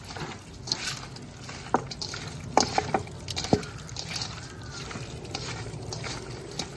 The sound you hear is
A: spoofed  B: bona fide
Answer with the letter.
B